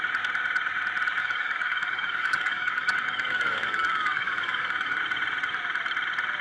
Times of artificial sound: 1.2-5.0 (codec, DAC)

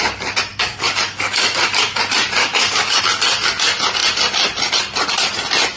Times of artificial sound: 0.5-2.0 (codec, DAC); 2.4-3.0

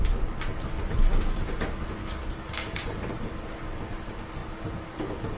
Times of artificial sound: 1.1-1.6 (codec, DAC); 2.0-2.9

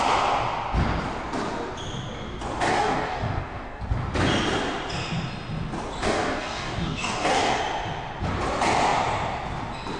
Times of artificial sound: 2.7-3.8 (codec, DAC); 6.0-7.6

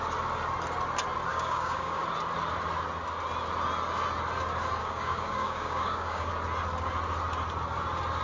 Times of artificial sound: 1.3-2.0 (codec, DAC); 4.8-6.3

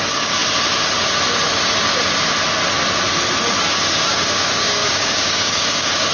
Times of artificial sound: 0.0-0.4 (codec, DAC); 4.1-6.1

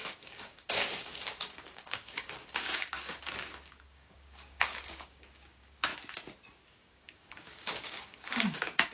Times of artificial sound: 0.0-5.9 (codec, DAC); 6.7-8.9

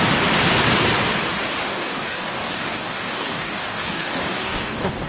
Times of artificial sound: 1.7-5.1 (codec, DAC)